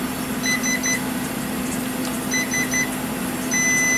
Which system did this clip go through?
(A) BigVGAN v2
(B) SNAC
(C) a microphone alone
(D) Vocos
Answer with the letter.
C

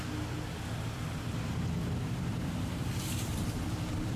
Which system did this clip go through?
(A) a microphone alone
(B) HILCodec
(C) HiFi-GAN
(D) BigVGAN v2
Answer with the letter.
D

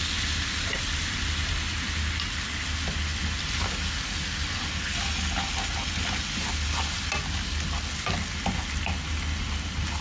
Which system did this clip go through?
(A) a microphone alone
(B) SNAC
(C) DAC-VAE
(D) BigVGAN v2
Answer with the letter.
A